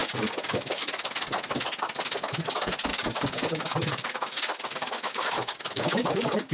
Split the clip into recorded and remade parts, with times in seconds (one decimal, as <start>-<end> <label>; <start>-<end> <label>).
0.0-0.8 remade; 0.8-2.9 recorded; 2.9-6.5 remade